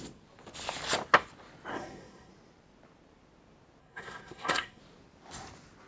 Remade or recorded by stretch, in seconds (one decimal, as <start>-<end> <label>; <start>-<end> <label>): 0.0-1.7 recorded; 1.7-2.3 remade; 2.3-3.8 recorded; 3.8-4.8 remade; 4.8-5.9 recorded